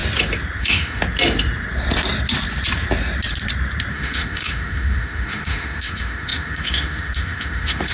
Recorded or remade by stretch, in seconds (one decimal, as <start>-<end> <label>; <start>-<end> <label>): 0.0-0.6 recorded; 0.6-1.0 remade; 1.0-3.9 recorded; 3.9-7.9 remade